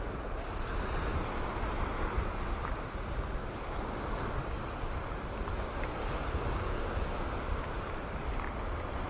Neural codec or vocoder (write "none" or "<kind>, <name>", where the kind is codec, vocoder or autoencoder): none